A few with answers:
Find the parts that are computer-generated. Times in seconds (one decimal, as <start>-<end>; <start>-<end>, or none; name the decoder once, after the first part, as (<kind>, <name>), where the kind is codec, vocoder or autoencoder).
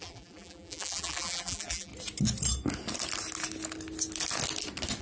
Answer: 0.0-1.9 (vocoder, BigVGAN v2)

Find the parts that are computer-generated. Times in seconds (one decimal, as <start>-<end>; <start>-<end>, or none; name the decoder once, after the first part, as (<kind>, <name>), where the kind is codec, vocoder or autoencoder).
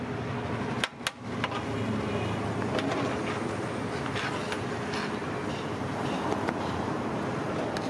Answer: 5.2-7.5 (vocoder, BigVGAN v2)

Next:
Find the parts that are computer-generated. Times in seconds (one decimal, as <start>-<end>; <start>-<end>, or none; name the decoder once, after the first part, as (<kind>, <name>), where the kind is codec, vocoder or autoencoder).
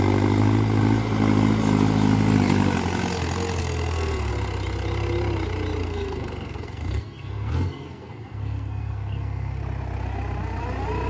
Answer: 3.6-4.3 (codec, SNAC); 5.8-9.6